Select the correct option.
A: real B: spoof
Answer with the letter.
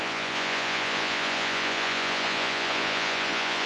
B